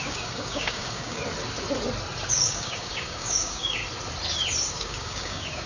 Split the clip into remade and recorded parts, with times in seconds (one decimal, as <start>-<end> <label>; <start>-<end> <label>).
0.0-1.2 remade; 1.2-2.3 recorded; 2.3-3.8 remade; 3.8-4.7 recorded; 4.7-5.7 remade